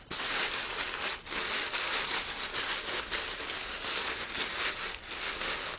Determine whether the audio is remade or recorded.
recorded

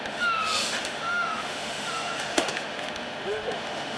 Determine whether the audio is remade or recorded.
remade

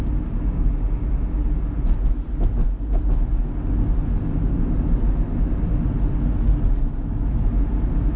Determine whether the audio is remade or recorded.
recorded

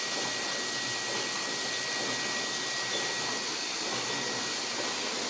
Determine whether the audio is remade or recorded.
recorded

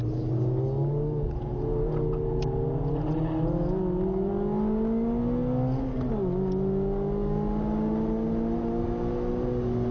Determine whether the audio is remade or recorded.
recorded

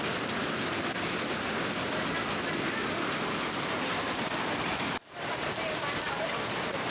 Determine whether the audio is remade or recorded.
recorded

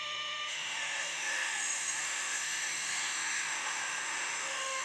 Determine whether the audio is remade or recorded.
remade